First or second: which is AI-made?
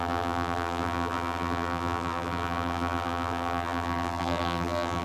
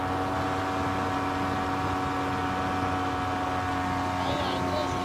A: first